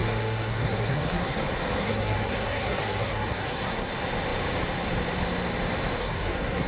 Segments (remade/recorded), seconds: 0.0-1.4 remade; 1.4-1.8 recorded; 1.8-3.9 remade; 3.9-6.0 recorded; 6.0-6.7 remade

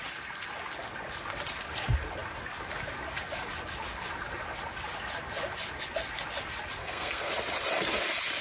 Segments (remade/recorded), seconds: 0.0-6.8 recorded; 6.8-7.3 remade; 7.3-8.4 recorded

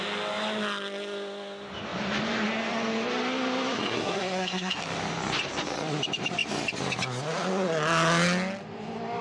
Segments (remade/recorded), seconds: 0.0-3.8 recorded; 3.8-4.8 remade; 4.8-9.2 recorded

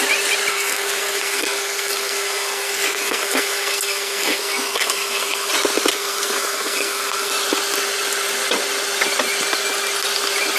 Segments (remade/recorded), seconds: 0.0-0.5 recorded; 0.5-5.5 remade; 5.5-5.9 recorded; 5.9-7.3 remade; 7.3-10.6 recorded

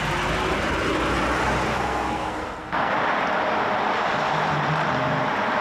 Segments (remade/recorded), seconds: 0.0-1.7 recorded; 1.7-2.9 remade; 2.9-5.6 recorded

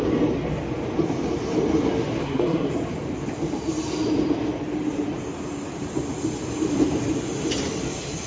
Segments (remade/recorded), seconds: 0.0-2.2 recorded; 2.2-2.7 remade; 2.7-8.3 recorded

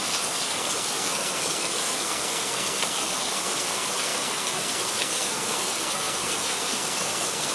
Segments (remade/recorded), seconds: 0.0-7.5 remade